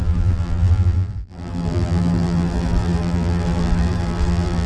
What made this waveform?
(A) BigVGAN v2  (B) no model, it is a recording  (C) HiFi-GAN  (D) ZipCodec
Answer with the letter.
A